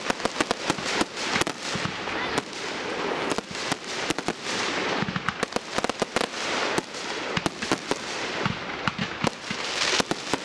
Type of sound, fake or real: real